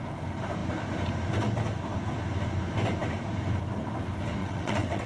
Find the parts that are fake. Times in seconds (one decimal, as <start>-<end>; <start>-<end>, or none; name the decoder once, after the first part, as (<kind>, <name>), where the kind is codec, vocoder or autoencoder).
4.4-5.1 (vocoder, WaveNeXt)